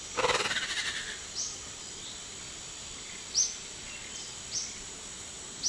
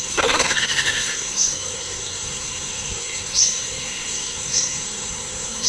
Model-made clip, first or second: second